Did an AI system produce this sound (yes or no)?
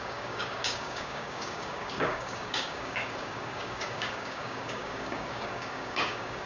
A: yes